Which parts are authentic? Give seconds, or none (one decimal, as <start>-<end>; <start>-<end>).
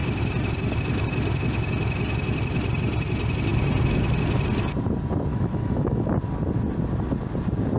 0.0-5.3; 6.1-7.8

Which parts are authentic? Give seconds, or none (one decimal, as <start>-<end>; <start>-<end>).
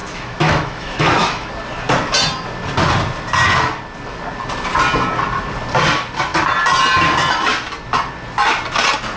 1.5-9.2